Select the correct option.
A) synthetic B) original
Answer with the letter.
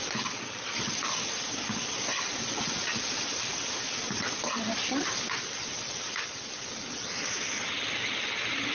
B